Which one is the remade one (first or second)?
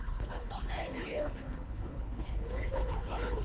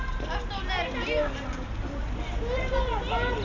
first